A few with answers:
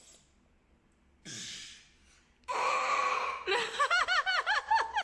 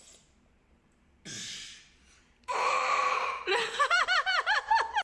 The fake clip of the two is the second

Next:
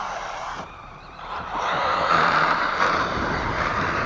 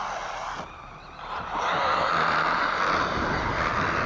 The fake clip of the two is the first